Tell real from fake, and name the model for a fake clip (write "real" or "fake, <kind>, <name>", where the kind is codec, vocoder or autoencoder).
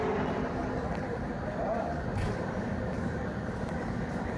real